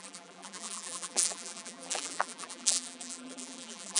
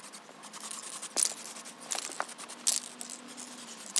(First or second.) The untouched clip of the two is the second